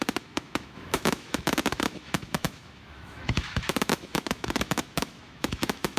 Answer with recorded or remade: remade